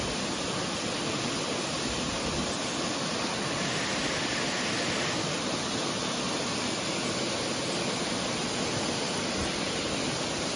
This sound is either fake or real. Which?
real